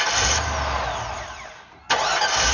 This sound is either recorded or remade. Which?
recorded